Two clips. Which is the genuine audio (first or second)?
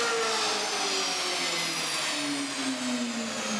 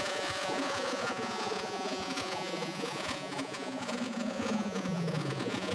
first